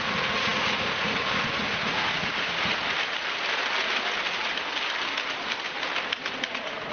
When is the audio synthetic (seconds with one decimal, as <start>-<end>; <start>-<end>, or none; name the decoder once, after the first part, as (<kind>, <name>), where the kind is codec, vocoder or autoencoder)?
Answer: 0.0-2.7 (vocoder, Vocos); 4.3-4.7; 6.5-6.9